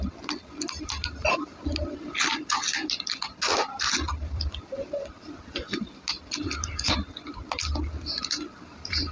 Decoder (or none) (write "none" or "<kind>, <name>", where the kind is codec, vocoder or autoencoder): none